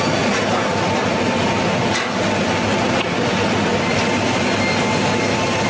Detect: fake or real real